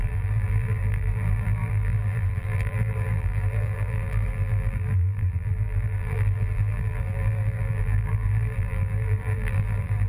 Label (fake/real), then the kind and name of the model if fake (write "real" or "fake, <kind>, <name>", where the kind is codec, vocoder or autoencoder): fake, vocoder, BigVGAN v2